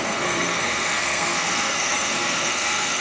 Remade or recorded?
remade